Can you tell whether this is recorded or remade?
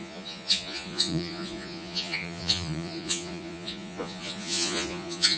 remade